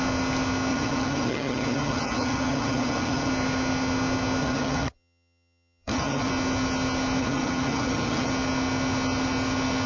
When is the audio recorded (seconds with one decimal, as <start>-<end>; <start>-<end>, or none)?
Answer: 0.0-0.7; 3.3-4.4; 6.3-7.2; 8.3-9.9

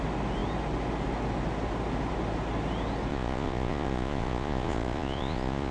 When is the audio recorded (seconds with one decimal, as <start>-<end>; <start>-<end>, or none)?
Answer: 0.0-3.1

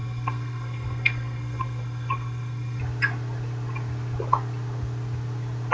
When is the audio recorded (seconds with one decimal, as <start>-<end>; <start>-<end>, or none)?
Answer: 2.8-5.7